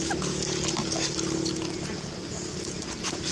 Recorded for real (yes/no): yes